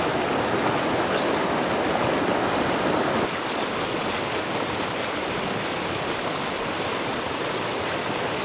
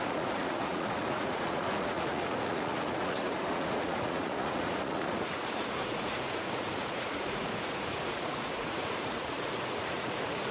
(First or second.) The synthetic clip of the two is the second